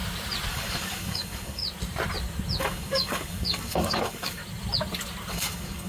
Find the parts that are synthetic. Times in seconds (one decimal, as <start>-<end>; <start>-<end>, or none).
0.5-1.6; 2.6-4.4; 5.3-5.9